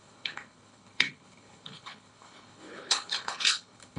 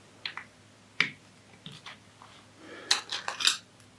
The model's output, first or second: first